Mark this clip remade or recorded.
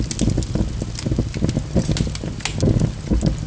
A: recorded